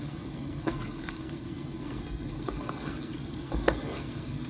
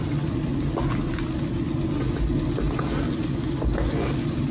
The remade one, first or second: first